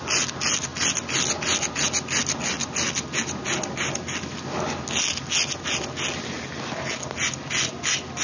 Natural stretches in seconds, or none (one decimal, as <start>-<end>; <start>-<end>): 0.0-8.2

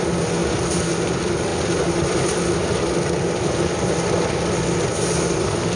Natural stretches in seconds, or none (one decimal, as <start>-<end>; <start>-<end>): 0.0-5.8